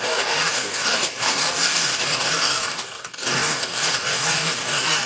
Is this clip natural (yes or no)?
no